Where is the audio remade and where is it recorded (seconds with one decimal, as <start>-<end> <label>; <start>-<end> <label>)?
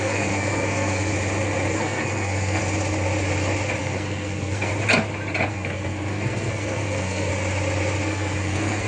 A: 0.0-1.1 remade; 1.1-1.7 recorded; 1.7-2.6 remade; 2.6-3.8 recorded; 3.8-4.7 remade; 4.7-5.5 recorded; 5.5-7.3 remade; 7.3-8.1 recorded; 8.1-8.9 remade